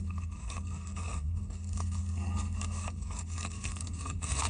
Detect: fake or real fake